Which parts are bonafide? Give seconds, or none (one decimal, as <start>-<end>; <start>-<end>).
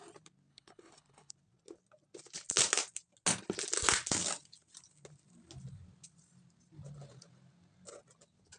0.0-0.5; 1.3-8.6